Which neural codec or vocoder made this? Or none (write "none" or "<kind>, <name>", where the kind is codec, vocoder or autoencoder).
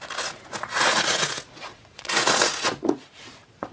vocoder, Vocos